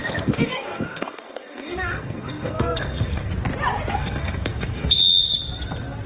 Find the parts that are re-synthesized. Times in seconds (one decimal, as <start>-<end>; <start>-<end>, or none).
0.0-3.3; 4.0-5.0